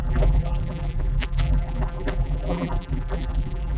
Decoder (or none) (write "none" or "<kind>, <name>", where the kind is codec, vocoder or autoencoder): vocoder, BigVGAN v2